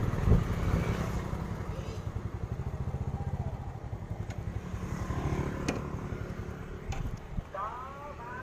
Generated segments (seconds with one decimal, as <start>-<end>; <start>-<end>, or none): none